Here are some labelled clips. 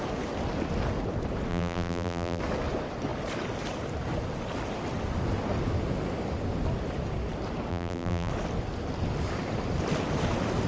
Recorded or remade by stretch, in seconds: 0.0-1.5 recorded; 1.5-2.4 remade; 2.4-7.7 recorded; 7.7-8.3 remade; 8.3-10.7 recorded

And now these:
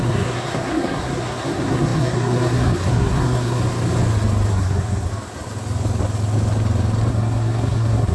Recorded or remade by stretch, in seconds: 0.0-3.6 remade; 3.6-4.5 recorded; 4.5-5.1 remade; 5.1-7.1 recorded; 7.1-8.1 remade

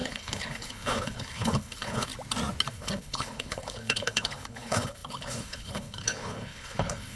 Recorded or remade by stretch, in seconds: 0.0-2.1 remade; 2.1-2.7 recorded; 2.7-7.2 remade

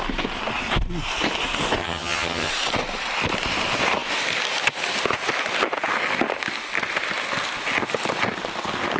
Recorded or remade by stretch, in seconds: 0.0-1.8 recorded; 1.8-2.5 remade; 2.5-9.0 recorded

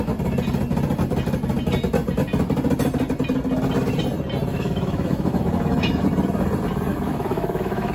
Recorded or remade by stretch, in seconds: 0.0-4.5 recorded; 4.5-6.0 remade; 6.0-6.9 recorded; 6.9-7.9 remade